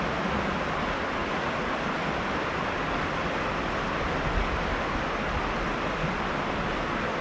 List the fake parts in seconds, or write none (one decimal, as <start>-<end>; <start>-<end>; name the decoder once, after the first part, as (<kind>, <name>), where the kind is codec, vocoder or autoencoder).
none